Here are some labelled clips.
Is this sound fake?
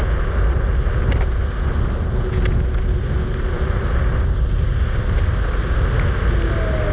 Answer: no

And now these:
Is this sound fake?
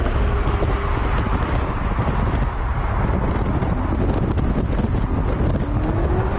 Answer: no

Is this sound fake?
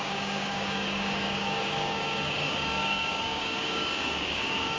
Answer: yes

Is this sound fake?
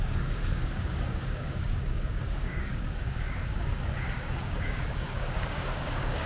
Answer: yes